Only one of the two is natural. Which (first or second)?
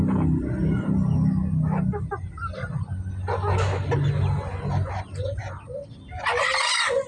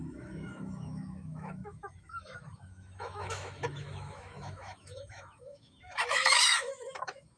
first